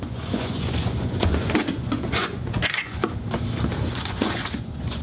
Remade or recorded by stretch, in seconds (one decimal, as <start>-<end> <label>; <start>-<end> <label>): 0.0-3.0 remade; 3.0-3.9 recorded; 3.9-5.0 remade